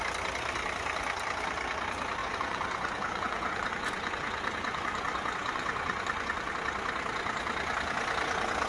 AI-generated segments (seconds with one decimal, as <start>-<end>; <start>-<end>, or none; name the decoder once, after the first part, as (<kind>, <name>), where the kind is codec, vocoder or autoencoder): 2.2-6.5 (vocoder, Vocos)